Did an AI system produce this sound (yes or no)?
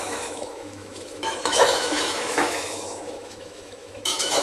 yes